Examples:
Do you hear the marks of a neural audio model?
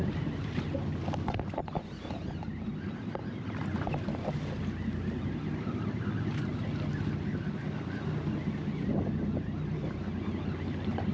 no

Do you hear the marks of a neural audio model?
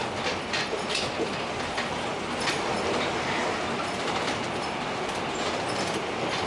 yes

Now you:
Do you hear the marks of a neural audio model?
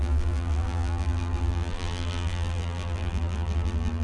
yes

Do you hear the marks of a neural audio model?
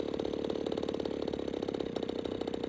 no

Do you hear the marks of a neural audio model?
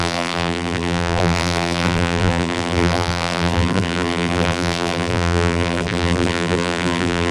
yes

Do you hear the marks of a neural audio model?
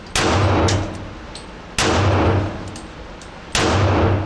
no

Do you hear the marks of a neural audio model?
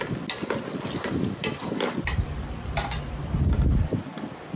yes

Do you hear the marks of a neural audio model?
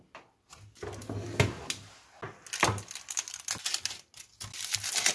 no